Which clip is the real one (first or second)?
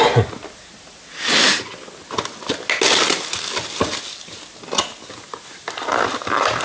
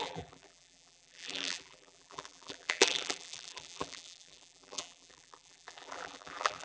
first